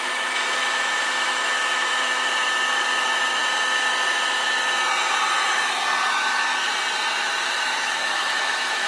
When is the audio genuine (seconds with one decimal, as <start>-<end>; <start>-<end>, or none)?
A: 3.4-6.1; 6.5-7.2